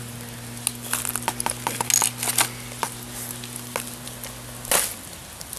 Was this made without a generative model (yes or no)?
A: yes